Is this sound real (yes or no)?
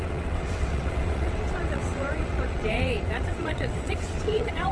no